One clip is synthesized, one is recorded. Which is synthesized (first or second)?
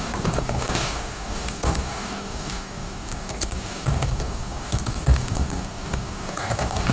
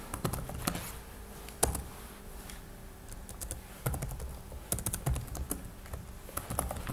first